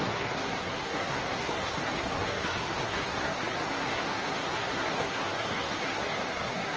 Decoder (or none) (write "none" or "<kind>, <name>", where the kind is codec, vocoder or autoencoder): codec, SNAC